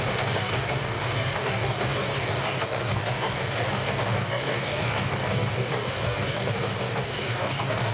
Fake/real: fake